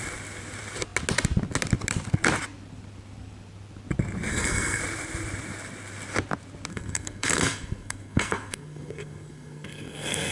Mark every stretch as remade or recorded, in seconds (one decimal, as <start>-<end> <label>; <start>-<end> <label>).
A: 0.0-4.3 recorded; 4.3-4.8 remade; 4.8-6.7 recorded; 6.7-10.3 remade